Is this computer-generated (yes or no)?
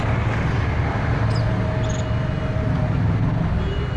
no